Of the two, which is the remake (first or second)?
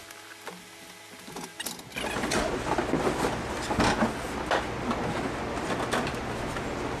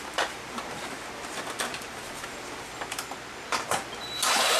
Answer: second